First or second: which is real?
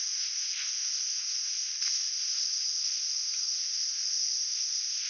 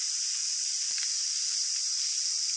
second